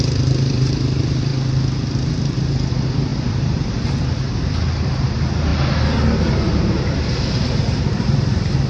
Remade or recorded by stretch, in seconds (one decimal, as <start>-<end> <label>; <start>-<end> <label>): 0.0-1.3 remade; 1.3-1.9 recorded; 1.9-5.5 remade; 5.5-6.2 recorded; 6.2-8.7 remade

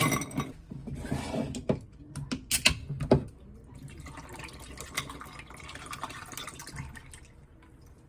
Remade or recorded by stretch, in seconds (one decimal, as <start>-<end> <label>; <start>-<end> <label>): 0.0-8.1 recorded

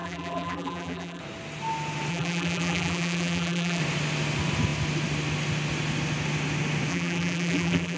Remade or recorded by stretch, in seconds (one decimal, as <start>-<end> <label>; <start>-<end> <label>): 0.0-1.2 remade; 1.2-2.1 recorded; 2.1-3.8 remade; 3.8-6.9 recorded; 6.9-8.0 remade

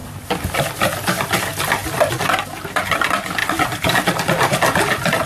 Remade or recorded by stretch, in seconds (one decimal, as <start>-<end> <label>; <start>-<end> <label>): 0.0-1.8 recorded; 1.8-2.8 remade; 2.8-5.3 recorded

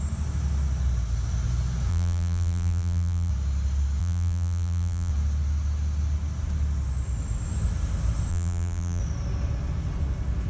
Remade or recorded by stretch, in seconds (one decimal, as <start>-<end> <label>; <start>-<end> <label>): 0.0-1.9 recorded; 1.9-3.3 remade; 3.3-4.0 recorded; 4.0-5.1 remade; 5.1-8.3 recorded; 8.3-9.0 remade; 9.0-10.5 recorded

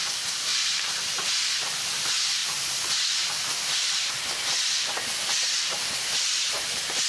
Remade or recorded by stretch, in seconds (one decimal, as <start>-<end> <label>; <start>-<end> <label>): 0.0-0.5 recorded; 0.5-1.1 remade; 1.1-2.4 recorded; 2.4-4.1 remade; 4.1-5.4 recorded; 5.4-7.1 remade